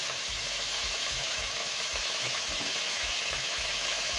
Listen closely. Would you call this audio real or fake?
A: fake